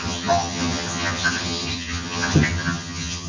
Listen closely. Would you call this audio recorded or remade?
remade